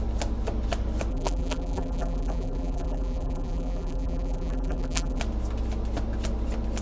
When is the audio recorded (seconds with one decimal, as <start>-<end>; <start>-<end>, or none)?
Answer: 0.0-1.1; 5.2-6.8